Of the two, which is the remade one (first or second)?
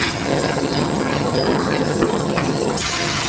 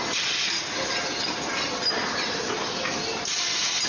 first